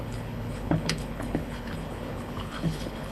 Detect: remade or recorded remade